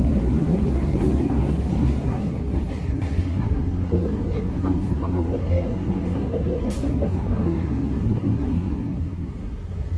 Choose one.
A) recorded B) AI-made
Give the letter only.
B